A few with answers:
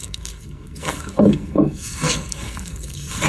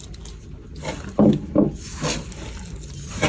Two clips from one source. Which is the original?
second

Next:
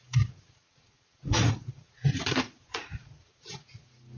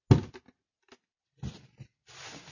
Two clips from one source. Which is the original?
second